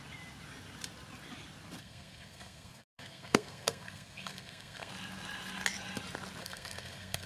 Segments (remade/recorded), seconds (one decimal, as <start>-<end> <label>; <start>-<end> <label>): 0.0-1.8 recorded; 1.8-4.9 remade; 4.9-6.4 recorded; 6.4-7.3 remade